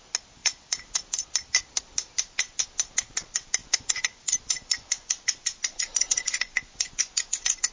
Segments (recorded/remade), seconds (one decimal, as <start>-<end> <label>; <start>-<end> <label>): 0.0-0.4 recorded; 0.4-1.0 remade; 1.0-3.6 recorded; 3.6-7.7 remade